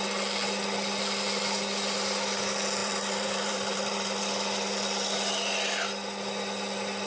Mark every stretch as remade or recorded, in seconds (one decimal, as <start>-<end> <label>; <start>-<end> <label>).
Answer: 0.0-2.8 recorded; 2.8-4.2 remade; 4.2-7.1 recorded